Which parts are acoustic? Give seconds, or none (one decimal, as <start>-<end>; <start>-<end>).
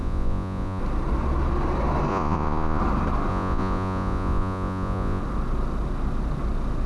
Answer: 0.8-2.1; 2.8-3.3; 5.2-6.9